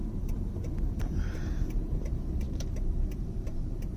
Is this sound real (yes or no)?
no